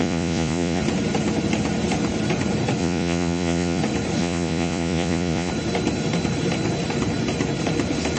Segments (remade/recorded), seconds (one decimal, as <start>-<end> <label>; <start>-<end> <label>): 0.0-0.8 remade; 0.8-2.8 recorded; 2.8-3.8 remade; 3.8-4.2 recorded; 4.2-5.5 remade; 5.5-8.2 recorded